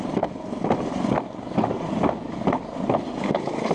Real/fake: real